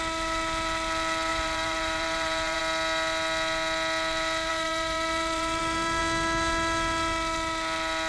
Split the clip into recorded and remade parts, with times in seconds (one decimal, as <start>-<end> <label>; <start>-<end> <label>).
0.0-1.3 recorded; 1.3-2.6 remade; 2.6-4.5 recorded; 4.5-6.0 remade; 6.0-8.1 recorded